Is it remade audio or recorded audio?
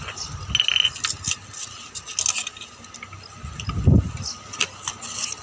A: recorded